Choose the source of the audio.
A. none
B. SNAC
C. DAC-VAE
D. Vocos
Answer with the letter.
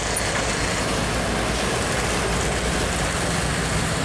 A